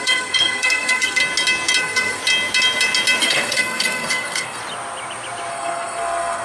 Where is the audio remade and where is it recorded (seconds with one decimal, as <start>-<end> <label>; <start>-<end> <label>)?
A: 0.0-1.2 remade; 1.2-1.8 recorded; 1.8-2.2 remade; 2.2-3.2 recorded; 3.2-4.6 remade; 4.6-5.5 recorded; 5.5-6.4 remade